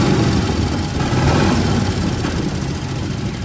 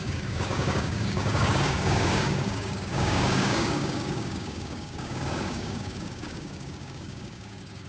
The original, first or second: first